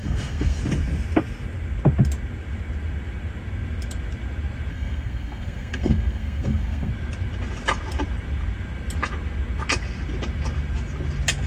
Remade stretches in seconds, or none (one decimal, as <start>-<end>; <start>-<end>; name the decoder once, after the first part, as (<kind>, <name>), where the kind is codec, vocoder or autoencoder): 0.0-0.6 (codec, SNAC); 4.7-6.9

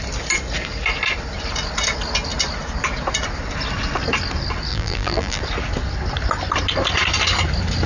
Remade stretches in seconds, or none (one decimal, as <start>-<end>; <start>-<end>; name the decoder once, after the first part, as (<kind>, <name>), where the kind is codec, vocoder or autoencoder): 4.7-5.4 (vocoder, BigVGAN v2)

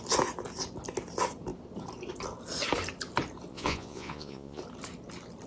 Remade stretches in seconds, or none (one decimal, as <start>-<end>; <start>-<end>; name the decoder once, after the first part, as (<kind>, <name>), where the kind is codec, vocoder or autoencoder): 3.5-4.6 (vocoder, Vocos)

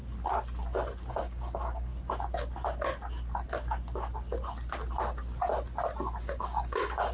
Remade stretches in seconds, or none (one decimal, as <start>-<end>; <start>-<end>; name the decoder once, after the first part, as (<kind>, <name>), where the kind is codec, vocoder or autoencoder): 1.1-1.9 (codec, DAC); 6.2-7.1

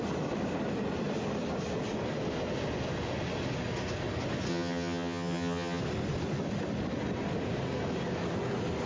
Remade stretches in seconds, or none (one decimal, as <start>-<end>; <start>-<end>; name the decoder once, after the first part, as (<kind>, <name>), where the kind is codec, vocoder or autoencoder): 4.5-5.8 (vocoder, HiFi-GAN)

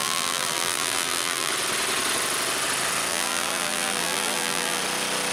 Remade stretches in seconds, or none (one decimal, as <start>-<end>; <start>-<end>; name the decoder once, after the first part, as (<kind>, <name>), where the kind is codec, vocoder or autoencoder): 0.0-1.5 (vocoder, BigVGAN v2); 3.1-4.8

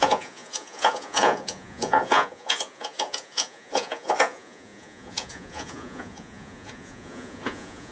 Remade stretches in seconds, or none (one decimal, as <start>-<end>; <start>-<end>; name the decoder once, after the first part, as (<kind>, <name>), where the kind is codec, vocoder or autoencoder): 0.0-7.9 (vocoder, Vocos)

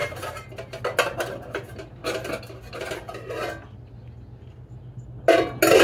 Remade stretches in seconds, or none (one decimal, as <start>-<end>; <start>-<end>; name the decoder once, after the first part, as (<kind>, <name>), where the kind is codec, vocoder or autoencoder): 0.0-0.8 (vocoder, BigVGAN v2)